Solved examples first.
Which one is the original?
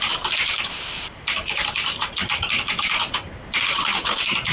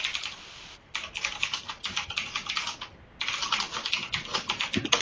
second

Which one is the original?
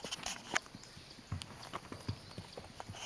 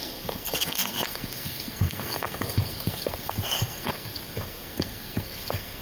first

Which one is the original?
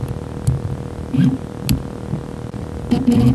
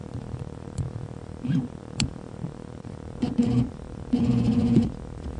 first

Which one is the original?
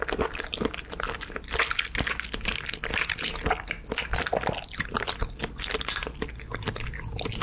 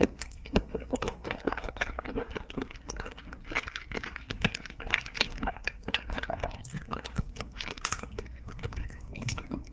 first